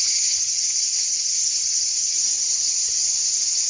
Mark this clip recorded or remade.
remade